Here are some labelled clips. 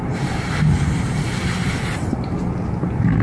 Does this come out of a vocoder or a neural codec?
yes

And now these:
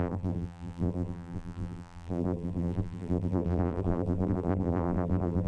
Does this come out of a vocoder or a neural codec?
yes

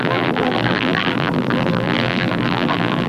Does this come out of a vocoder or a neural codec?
yes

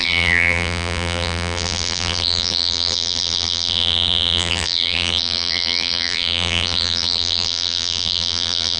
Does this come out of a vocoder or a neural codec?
yes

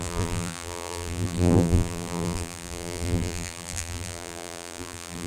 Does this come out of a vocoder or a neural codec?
yes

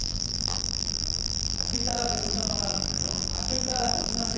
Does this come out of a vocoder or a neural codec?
yes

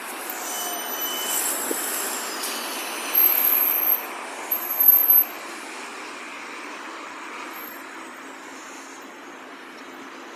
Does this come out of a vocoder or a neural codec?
no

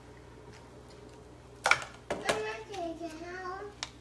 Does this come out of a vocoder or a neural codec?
no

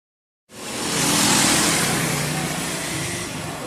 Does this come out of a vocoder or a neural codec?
yes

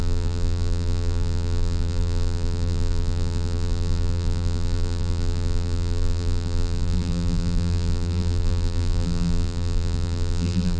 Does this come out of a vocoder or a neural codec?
yes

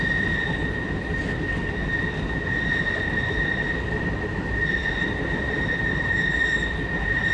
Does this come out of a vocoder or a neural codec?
no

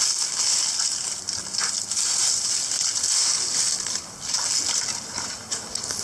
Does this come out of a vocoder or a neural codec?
no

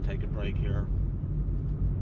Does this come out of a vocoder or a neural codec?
no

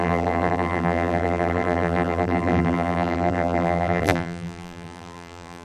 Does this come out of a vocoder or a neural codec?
yes